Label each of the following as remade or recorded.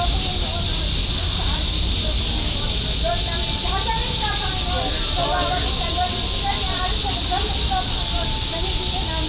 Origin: recorded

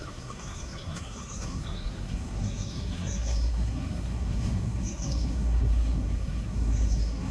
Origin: remade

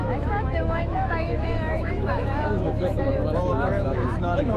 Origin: remade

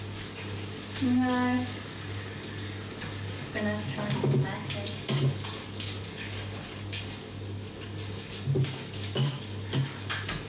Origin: remade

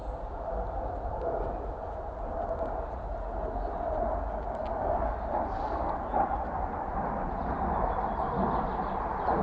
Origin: recorded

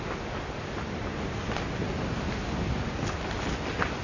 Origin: recorded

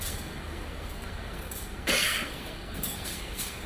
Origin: remade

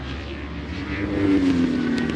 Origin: recorded